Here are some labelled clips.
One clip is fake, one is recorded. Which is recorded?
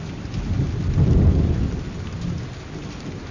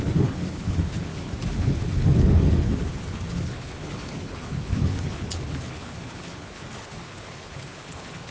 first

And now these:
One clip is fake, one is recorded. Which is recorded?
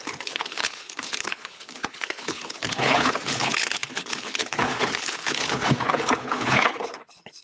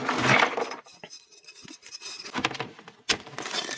second